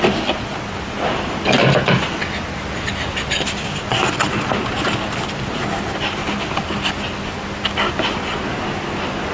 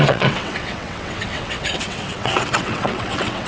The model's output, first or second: second